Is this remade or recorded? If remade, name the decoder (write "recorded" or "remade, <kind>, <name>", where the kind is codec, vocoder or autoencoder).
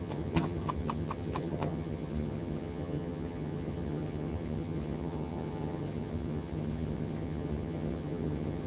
remade, vocoder, HiFi-GAN